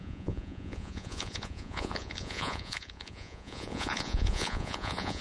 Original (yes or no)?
no